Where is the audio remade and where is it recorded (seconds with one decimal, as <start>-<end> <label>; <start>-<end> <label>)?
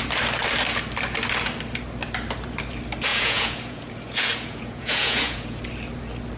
0.0-3.1 recorded; 3.1-5.6 remade; 5.6-6.4 recorded